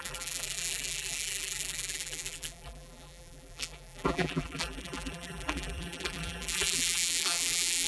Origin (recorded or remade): remade